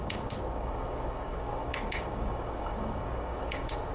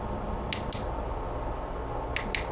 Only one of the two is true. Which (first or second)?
second